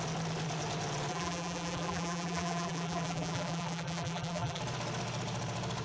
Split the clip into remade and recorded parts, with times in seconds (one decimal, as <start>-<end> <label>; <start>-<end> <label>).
0.0-1.1 recorded; 1.1-4.6 remade; 4.6-5.8 recorded